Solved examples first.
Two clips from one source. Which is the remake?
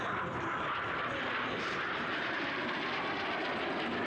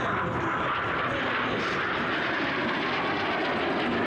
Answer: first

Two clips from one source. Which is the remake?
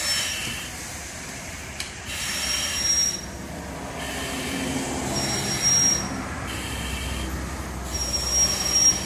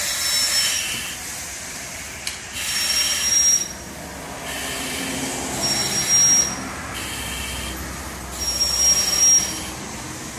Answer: first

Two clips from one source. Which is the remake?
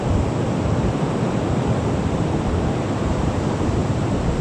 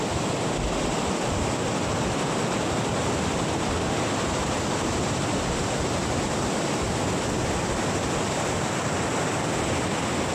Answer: first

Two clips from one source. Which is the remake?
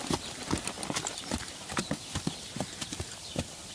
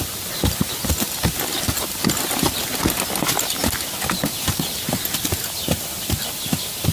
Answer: first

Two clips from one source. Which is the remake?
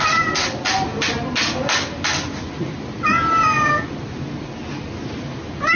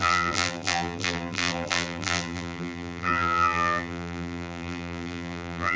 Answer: second